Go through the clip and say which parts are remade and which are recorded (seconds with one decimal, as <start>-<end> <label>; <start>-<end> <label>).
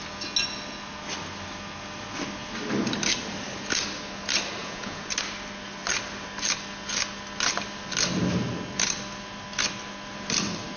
0.0-4.6 recorded; 4.6-5.1 remade; 5.1-10.8 recorded